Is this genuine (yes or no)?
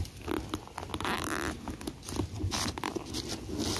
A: yes